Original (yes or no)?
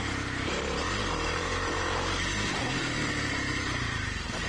no